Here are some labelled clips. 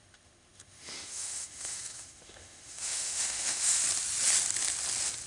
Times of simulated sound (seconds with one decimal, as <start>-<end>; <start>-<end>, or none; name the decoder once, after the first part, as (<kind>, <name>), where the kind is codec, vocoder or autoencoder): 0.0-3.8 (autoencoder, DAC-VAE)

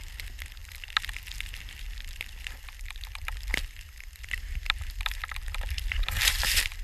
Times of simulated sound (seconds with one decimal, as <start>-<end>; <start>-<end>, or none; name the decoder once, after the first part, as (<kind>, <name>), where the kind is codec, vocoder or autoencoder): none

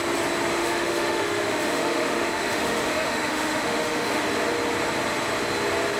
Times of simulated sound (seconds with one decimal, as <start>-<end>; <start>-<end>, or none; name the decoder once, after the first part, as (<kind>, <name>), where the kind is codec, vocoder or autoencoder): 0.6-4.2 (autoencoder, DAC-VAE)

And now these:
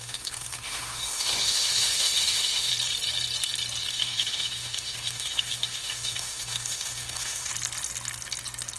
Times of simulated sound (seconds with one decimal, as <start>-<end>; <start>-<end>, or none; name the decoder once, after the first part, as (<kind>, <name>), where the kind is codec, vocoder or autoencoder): 0.0-2.7 (autoencoder, DAC-VAE); 3.9-7.5

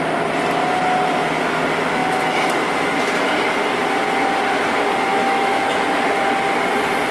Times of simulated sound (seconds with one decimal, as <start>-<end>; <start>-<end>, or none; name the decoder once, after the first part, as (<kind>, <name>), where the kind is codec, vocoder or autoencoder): 5.1-5.9 (autoencoder, DAC-VAE)

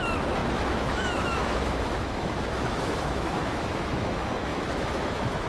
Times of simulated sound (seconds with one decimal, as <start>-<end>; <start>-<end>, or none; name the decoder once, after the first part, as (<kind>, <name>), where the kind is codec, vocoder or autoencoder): 0.0-5.5 (autoencoder, DAC-VAE)

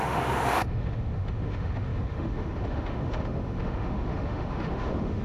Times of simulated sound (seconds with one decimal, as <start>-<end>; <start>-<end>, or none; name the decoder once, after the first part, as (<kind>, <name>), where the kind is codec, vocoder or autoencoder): 0.0-5.2 (autoencoder, DAC-VAE)